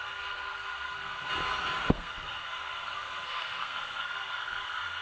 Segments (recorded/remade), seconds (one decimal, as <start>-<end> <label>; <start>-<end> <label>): 0.0-1.3 remade; 1.3-1.9 recorded; 1.9-5.0 remade